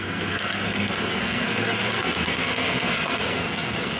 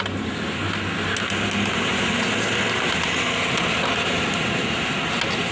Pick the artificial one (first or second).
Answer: first